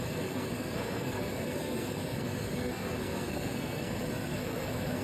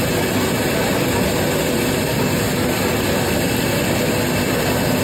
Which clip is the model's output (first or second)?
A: first